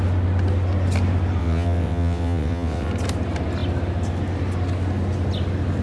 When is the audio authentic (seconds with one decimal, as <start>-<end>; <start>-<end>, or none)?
0.0-1.4; 2.9-5.8